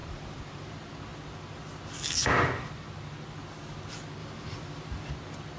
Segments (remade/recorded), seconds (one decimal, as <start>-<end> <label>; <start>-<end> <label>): 0.0-0.7 remade; 0.7-4.2 recorded; 4.2-5.1 remade; 5.1-5.6 recorded